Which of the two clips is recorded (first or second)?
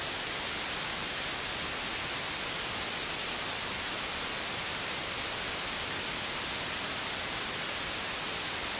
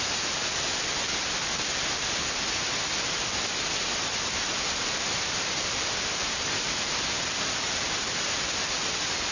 first